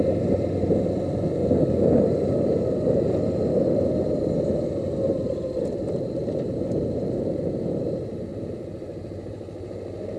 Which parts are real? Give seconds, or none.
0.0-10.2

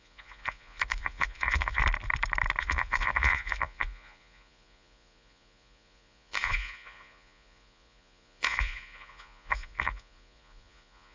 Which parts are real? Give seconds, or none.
1.8-2.6

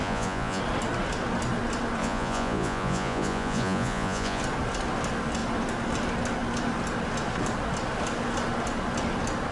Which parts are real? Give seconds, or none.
0.6-2.0; 4.4-9.5